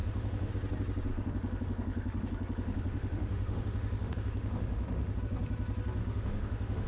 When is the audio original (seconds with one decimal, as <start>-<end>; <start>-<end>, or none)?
0.5-1.1; 5.2-6.0